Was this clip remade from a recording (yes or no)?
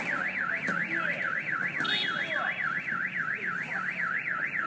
no